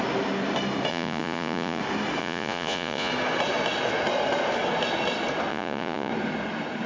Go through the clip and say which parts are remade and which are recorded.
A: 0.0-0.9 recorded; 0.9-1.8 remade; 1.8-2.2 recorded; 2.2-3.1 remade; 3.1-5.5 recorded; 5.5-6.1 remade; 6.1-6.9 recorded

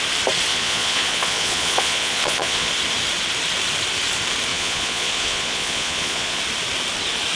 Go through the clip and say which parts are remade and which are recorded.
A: 0.0-0.5 recorded; 0.5-2.7 remade; 2.7-4.5 recorded; 4.5-6.4 remade; 6.4-7.4 recorded

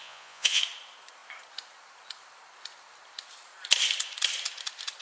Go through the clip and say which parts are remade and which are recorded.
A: 0.0-0.6 remade; 0.6-5.0 recorded

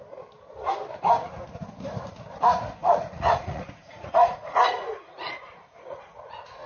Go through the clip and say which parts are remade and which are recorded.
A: 0.0-2.8 recorded; 2.8-6.7 remade

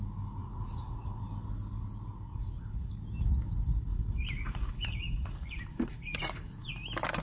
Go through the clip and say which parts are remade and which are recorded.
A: 0.0-0.4 recorded; 0.4-1.2 remade; 1.2-2.3 recorded; 2.3-2.9 remade; 2.9-3.9 recorded; 3.9-6.7 remade; 6.7-7.2 recorded